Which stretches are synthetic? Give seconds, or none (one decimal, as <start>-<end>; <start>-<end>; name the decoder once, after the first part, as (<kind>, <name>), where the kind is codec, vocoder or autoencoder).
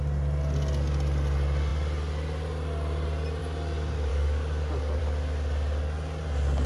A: 4.1-5.0 (codec, DAC)